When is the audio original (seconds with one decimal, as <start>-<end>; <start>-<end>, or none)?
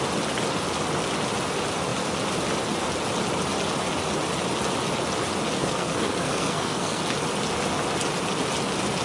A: 0.0-5.6; 7.0-9.0